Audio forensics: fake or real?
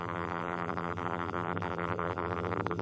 fake